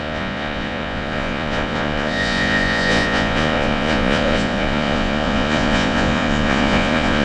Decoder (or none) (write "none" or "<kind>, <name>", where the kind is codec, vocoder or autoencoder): vocoder, Vocos